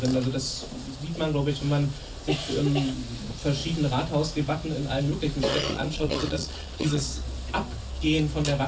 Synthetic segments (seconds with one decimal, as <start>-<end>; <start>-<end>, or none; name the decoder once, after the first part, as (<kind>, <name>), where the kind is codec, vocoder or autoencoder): 5.5-7.0 (vocoder, Vocos)